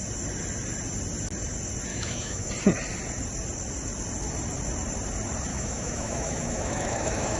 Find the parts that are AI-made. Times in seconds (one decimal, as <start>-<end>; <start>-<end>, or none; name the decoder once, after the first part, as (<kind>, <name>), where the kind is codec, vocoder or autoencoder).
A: 1.9-2.5 (autoencoder, DAC-VAE); 5.5-7.4